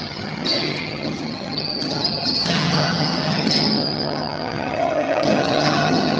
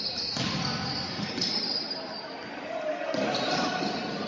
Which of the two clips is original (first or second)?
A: second